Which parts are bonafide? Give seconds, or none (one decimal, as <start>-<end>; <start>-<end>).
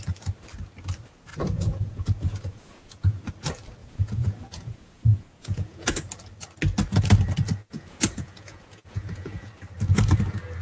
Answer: 0.0-1.3; 3.3-3.8; 6.1-7.6; 9.5-10.6